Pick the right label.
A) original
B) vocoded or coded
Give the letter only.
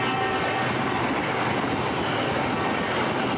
A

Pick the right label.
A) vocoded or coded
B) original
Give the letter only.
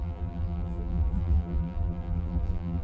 A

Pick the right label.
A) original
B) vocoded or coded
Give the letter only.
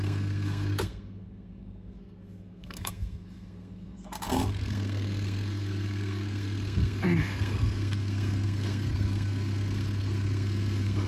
B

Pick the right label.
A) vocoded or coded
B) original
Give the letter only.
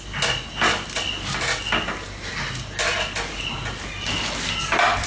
B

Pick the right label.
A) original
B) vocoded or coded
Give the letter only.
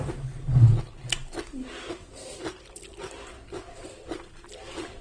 A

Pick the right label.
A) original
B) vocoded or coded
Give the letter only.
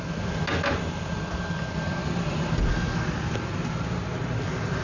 A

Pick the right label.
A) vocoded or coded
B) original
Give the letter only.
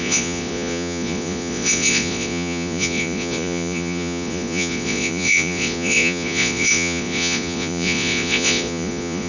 A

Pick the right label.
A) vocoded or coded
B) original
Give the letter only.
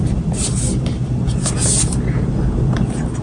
B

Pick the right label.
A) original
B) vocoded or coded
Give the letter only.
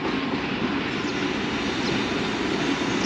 A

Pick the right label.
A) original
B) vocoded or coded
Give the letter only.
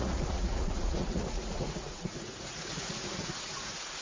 B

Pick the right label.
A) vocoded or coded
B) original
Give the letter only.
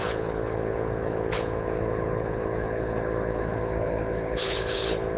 A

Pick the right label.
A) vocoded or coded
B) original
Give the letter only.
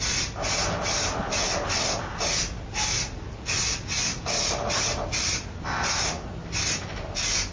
B